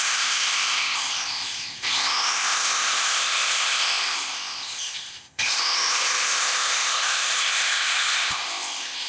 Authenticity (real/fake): fake